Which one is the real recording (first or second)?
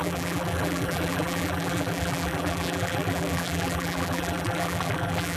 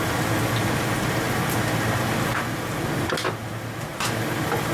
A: second